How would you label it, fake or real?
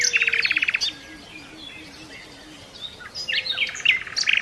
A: real